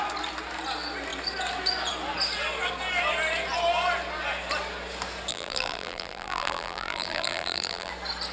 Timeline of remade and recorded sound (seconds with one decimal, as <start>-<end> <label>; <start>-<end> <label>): 0.0-5.3 recorded; 5.3-7.9 remade; 7.9-8.3 recorded